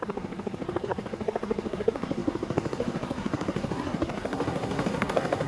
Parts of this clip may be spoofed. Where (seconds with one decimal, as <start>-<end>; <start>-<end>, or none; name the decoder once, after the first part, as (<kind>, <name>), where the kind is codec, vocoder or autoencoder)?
0.0-5.5 (codec, SNAC)